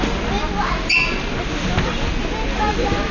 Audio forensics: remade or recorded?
recorded